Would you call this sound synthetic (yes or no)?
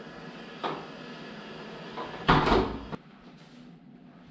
no